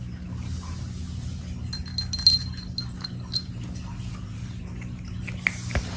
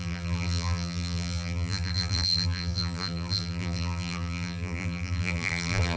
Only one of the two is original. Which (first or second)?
first